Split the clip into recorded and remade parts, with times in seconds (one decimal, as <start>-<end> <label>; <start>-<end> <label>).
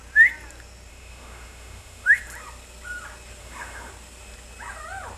0.0-0.9 recorded; 0.9-2.2 remade; 2.2-3.4 recorded; 3.4-3.9 remade; 3.9-5.2 recorded